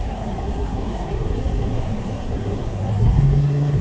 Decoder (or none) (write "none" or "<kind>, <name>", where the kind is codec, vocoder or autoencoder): codec, SNAC